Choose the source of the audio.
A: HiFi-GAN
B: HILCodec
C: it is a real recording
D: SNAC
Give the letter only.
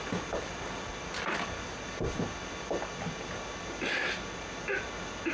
C